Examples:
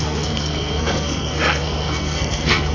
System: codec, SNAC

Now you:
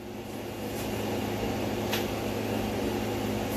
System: none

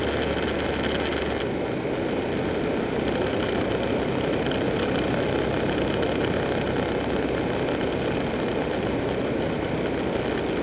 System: none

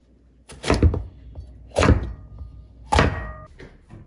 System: none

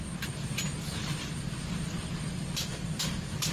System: none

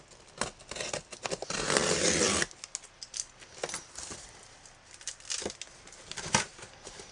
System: none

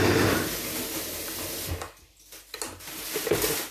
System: none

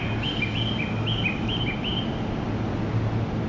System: none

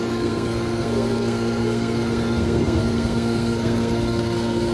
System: codec, SNAC